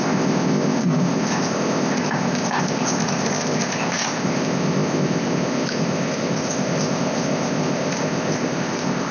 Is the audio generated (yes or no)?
yes